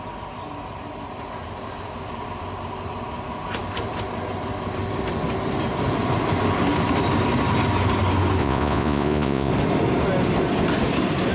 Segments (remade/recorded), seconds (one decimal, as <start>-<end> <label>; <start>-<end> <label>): 0.0-8.4 recorded; 8.4-9.5 remade; 9.5-11.3 recorded